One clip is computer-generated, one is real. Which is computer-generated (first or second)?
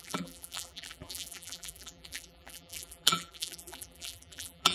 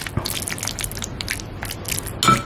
first